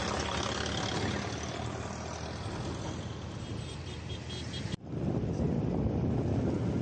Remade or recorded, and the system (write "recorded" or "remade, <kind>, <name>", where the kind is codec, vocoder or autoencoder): recorded